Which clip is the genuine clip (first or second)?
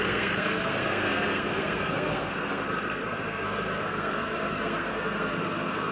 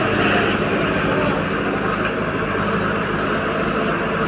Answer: second